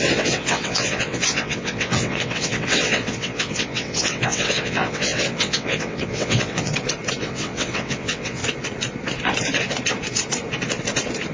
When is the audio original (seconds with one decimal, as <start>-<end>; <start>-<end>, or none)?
6.7-7.2; 8.4-11.3